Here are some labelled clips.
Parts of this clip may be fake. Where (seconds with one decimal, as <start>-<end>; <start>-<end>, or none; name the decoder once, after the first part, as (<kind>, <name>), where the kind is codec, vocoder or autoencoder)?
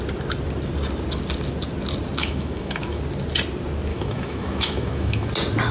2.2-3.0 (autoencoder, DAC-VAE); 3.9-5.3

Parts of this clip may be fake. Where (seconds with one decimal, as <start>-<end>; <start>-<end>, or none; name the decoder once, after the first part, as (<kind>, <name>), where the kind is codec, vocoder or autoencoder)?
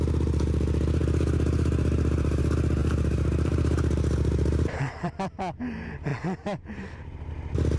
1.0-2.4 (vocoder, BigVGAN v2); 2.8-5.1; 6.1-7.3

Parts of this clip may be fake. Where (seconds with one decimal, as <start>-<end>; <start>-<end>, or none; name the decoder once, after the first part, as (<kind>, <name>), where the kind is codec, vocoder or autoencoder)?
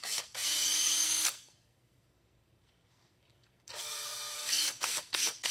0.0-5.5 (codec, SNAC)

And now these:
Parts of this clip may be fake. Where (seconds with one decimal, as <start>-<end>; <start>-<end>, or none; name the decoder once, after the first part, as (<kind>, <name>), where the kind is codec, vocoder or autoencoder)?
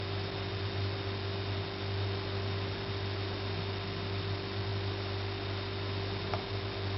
none